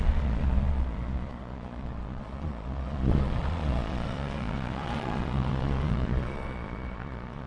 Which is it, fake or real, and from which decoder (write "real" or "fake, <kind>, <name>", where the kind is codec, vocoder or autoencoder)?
fake, vocoder, Vocos